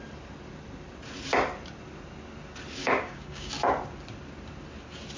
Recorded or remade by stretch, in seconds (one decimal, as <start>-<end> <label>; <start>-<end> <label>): 0.0-2.8 recorded; 2.8-3.5 remade; 3.5-5.2 recorded